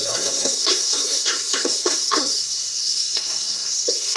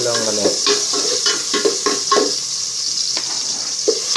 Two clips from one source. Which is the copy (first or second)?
first